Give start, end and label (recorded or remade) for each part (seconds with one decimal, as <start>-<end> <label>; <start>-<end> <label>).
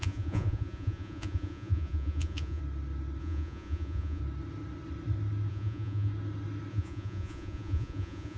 0.0-2.6 remade; 2.6-3.2 recorded; 3.2-4.2 remade; 4.2-5.5 recorded; 5.5-6.1 remade; 6.1-6.7 recorded; 6.7-8.4 remade